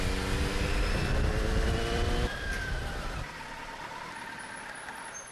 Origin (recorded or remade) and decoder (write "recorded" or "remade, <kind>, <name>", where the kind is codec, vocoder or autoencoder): recorded